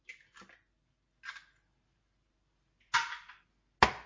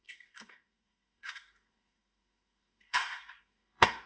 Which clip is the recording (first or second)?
first